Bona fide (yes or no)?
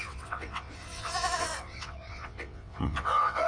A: no